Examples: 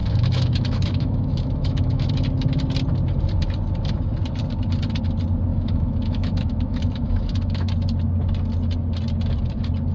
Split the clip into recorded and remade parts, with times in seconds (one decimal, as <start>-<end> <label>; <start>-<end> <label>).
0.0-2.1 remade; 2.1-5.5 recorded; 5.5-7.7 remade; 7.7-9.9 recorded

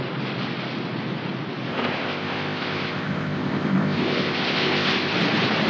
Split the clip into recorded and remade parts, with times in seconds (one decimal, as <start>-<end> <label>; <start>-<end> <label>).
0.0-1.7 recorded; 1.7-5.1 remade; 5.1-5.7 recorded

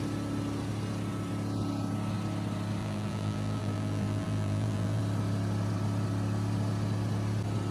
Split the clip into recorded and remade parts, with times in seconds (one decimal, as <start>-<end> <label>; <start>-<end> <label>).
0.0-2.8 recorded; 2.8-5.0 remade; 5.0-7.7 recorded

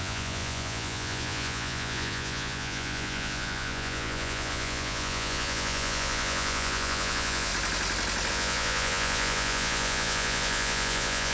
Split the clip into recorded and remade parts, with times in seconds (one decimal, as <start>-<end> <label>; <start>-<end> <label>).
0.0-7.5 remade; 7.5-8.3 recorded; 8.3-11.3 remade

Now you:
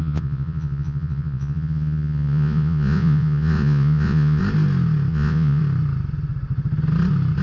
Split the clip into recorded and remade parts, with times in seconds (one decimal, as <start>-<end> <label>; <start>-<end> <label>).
0.0-4.4 remade; 4.4-5.1 recorded; 5.1-5.6 remade; 5.6-7.4 recorded

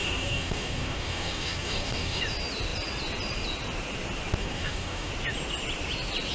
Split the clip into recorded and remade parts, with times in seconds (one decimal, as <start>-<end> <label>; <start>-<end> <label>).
0.0-2.2 remade; 2.2-4.4 recorded; 4.4-5.1 remade; 5.1-6.3 recorded

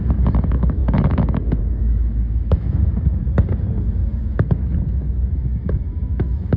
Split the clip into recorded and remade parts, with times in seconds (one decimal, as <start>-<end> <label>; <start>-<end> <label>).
0.0-3.2 remade; 3.2-4.2 recorded; 4.2-6.6 remade

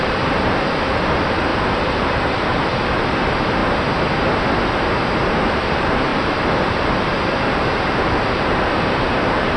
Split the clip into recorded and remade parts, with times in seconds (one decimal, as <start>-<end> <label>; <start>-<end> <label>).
0.0-3.6 remade; 3.6-5.6 recorded; 5.6-9.6 remade